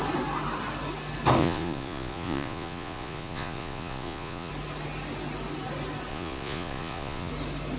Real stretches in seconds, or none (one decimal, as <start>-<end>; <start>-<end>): 0.0-1.4; 4.5-6.1; 7.3-7.8